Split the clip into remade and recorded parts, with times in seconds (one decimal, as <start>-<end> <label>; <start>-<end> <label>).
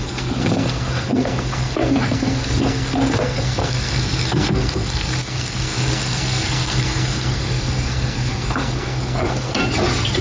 0.0-9.6 remade; 9.6-10.2 recorded